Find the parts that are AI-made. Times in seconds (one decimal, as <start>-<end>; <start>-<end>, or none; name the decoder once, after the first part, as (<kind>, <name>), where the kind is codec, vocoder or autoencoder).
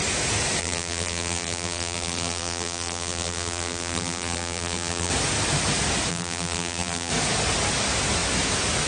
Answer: 0.6-5.1 (vocoder, BigVGAN v2); 6.1-7.1